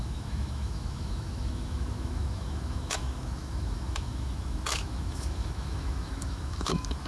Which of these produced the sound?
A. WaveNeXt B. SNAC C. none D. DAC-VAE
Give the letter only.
D